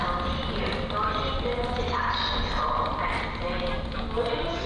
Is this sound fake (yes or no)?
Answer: no